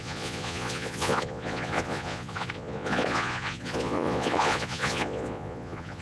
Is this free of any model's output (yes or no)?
no